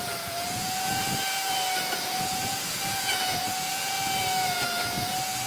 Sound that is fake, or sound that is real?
fake